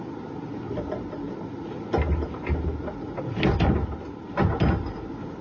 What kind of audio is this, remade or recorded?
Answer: recorded